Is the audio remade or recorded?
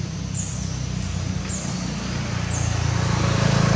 recorded